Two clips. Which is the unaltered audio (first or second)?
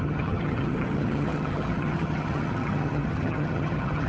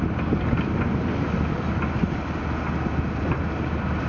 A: second